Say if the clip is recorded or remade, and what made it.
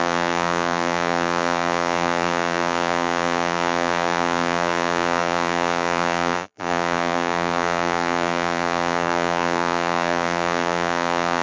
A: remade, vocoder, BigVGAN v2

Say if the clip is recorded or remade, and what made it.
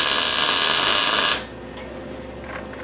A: recorded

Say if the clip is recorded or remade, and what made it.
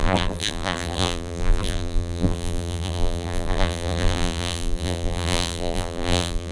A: remade, vocoder, BigVGAN v2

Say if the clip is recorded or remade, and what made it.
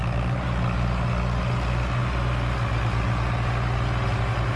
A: recorded